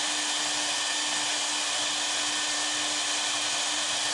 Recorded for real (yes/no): yes